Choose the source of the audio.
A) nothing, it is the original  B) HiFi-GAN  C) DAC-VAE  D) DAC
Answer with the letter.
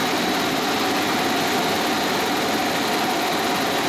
A